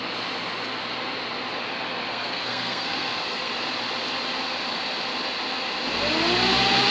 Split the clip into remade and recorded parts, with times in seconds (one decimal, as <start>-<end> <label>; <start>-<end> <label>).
0.0-2.1 recorded; 2.1-3.5 remade; 3.5-6.9 recorded